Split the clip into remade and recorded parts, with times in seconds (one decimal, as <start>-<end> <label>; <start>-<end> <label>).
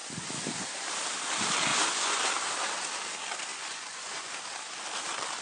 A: 0.0-1.7 recorded; 1.7-2.2 remade; 2.2-3.5 recorded; 3.5-4.3 remade; 4.3-5.4 recorded